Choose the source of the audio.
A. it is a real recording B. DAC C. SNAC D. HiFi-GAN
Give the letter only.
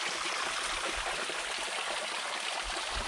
A